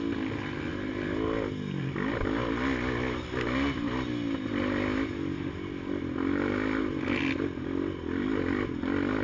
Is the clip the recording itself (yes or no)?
yes